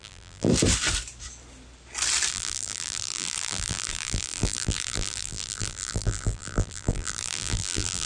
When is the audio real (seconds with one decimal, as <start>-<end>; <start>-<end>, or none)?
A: 0.5-2.3